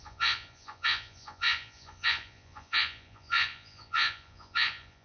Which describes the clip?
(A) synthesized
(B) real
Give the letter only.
A